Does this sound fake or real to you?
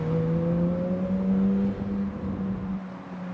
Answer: real